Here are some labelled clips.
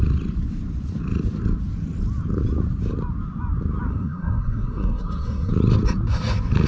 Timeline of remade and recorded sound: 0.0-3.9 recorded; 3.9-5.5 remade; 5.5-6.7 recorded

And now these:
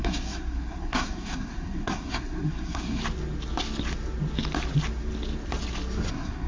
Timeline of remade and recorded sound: 0.0-3.0 remade; 3.0-6.1 recorded; 6.1-6.5 remade

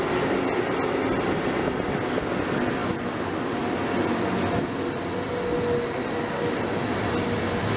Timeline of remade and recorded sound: 0.0-7.8 recorded